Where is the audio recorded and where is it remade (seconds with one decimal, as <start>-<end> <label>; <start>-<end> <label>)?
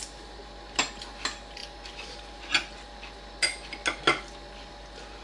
0.0-5.2 recorded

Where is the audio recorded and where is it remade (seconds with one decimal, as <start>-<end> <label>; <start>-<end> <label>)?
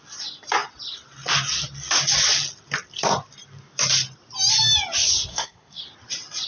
0.0-5.3 recorded; 5.3-5.8 remade; 5.8-6.5 recorded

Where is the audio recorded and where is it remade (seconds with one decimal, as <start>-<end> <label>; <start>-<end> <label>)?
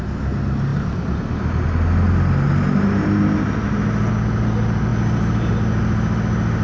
0.0-6.6 recorded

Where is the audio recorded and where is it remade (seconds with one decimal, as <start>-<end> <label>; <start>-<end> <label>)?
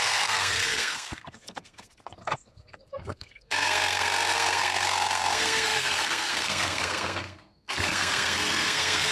0.0-9.1 remade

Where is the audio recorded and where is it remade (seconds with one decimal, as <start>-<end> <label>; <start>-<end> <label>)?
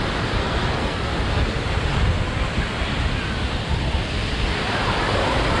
0.0-0.4 recorded; 0.4-1.1 remade; 1.1-5.6 recorded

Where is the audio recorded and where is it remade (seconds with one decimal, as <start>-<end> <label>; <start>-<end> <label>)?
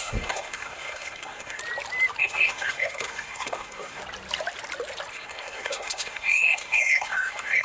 0.0-1.6 remade; 1.6-2.2 recorded; 2.2-4.0 remade; 4.0-5.1 recorded; 5.1-7.6 remade